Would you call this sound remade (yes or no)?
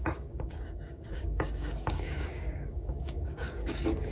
yes